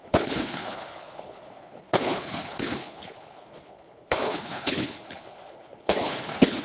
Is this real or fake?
fake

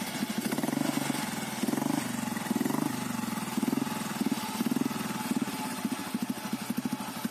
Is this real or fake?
real